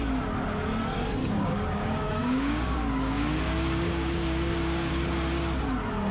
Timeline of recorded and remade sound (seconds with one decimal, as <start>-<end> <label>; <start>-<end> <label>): 0.0-1.2 recorded; 1.2-4.9 remade; 4.9-6.1 recorded